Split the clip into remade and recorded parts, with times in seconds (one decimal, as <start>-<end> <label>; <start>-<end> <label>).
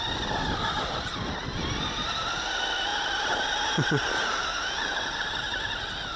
0.0-6.2 recorded